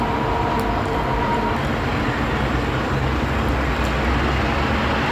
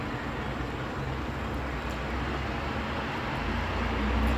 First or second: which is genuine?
second